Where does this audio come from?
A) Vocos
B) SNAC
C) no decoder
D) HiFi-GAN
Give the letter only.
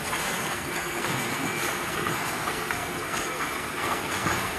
B